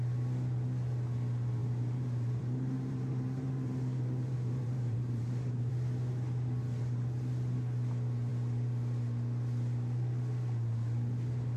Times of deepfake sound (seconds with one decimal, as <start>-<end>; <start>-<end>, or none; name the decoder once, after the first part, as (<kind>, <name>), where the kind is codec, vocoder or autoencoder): 1.6-5.7 (vocoder, BigVGAN v2)